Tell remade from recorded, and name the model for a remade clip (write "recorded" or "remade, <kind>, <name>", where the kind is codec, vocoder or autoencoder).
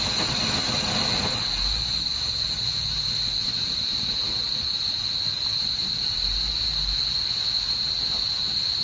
recorded